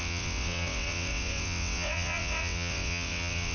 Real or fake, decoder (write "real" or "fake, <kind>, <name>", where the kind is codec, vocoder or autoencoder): fake, vocoder, WaveNeXt